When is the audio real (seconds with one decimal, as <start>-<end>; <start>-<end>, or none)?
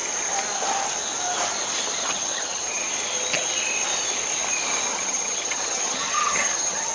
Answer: 0.0-2.0; 2.9-4.9